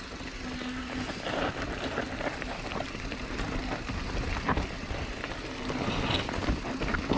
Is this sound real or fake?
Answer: real